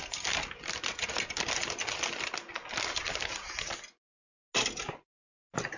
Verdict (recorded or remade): recorded